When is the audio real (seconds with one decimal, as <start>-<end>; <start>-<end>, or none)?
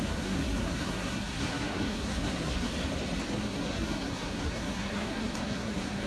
2.7-3.3